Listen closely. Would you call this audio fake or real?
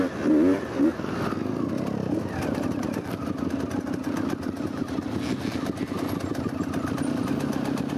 real